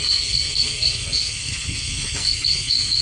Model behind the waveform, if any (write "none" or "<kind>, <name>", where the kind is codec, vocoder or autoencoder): codec, SNAC